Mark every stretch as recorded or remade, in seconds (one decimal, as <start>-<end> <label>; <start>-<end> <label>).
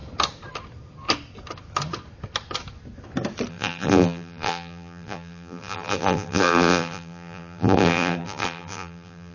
0.0-3.5 recorded; 3.5-9.3 remade